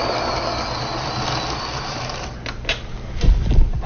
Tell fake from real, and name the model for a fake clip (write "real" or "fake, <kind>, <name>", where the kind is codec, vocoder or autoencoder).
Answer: real